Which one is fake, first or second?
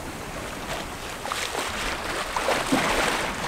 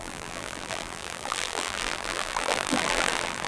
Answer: second